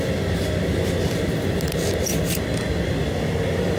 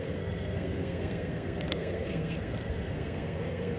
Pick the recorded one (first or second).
first